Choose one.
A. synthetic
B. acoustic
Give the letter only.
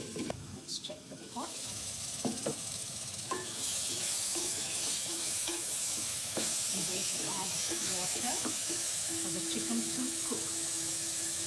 A